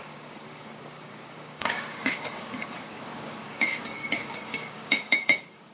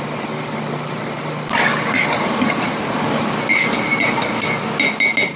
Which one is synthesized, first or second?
first